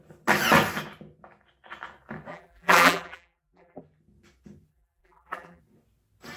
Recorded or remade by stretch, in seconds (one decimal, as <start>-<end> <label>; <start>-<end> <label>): 0.0-2.3 recorded; 2.3-3.8 remade; 3.8-4.7 recorded; 4.7-5.6 remade; 5.6-6.4 recorded